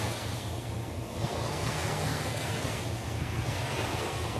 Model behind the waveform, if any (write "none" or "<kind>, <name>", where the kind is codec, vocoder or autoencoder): codec, SNAC